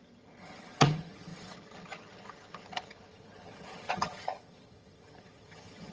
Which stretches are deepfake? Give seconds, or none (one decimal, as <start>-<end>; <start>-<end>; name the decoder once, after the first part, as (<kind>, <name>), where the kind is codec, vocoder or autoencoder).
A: 0.0-5.9 (vocoder, HiFi-GAN)